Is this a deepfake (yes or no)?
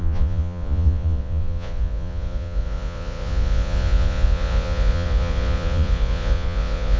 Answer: yes